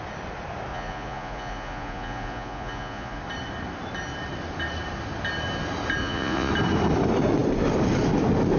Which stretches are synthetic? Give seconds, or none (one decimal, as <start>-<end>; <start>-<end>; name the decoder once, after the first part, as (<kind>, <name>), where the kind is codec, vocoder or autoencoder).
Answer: 0.7-3.2 (vocoder, Vocos); 6.0-6.5